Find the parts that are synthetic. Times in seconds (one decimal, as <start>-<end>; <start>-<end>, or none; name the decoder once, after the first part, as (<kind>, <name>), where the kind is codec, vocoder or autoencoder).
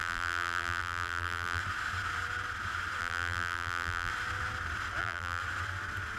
0.0-1.6 (vocoder, BigVGAN v2); 3.0-4.1; 5.0-5.4